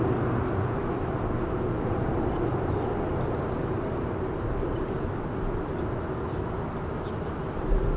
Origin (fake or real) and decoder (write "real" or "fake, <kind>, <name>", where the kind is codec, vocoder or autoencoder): real